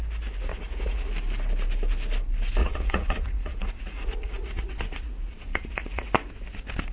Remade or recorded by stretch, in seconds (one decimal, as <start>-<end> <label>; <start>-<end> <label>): 0.0-0.5 recorded; 0.5-1.1 remade; 1.1-2.6 recorded; 2.6-6.1 remade; 6.1-6.9 recorded

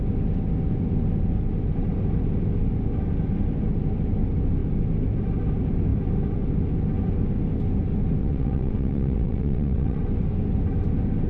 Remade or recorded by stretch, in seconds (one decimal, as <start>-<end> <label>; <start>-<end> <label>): 0.0-8.2 recorded; 8.2-10.0 remade; 10.0-11.3 recorded

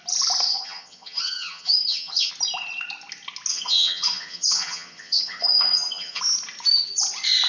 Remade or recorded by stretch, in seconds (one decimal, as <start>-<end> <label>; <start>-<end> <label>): 0.0-0.5 recorded; 0.5-2.3 remade; 2.3-3.5 recorded; 3.5-6.2 remade; 6.2-7.5 recorded

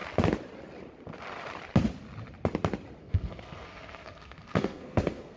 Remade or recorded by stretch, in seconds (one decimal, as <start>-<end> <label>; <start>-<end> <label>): 0.0-3.0 recorded; 3.0-5.4 remade

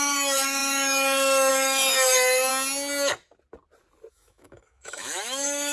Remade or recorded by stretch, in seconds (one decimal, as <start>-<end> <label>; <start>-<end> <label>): 0.0-2.5 remade; 2.5-4.1 recorded; 4.1-5.7 remade